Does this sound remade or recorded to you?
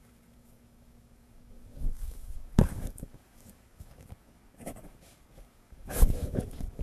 remade